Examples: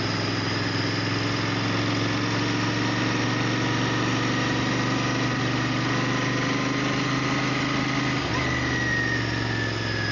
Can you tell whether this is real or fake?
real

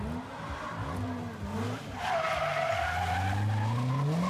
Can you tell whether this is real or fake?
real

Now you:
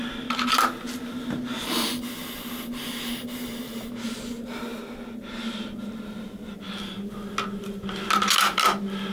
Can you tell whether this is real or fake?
real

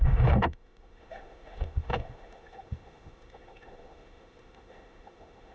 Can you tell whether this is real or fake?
fake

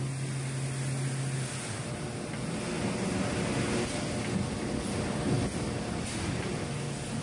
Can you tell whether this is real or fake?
real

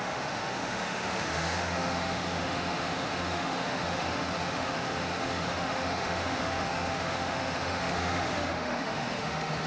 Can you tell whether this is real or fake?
fake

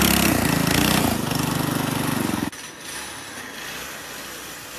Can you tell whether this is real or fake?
real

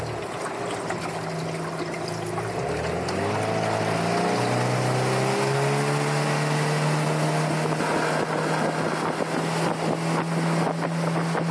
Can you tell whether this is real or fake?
real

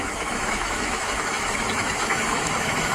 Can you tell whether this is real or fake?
fake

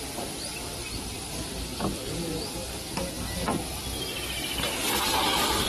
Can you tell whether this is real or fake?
real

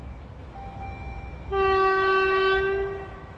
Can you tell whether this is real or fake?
fake